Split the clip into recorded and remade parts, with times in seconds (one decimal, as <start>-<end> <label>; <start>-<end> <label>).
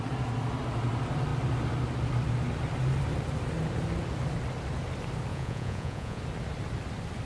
0.0-5.3 recorded; 5.3-6.2 remade; 6.2-7.3 recorded